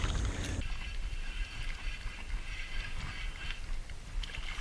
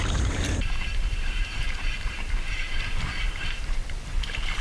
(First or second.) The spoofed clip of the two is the second